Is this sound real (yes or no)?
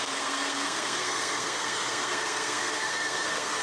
no